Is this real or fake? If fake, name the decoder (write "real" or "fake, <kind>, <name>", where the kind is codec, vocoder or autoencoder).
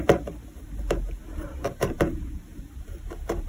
fake, vocoder, BigVGAN v2